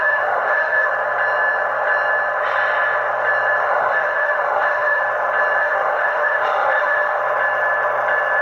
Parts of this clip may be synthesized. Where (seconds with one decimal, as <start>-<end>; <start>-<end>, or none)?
0.0-0.9; 3.6-5.0; 5.6-7.2